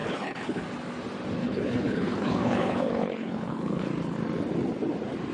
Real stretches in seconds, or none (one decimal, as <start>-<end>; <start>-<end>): 0.6-1.4; 3.9-5.3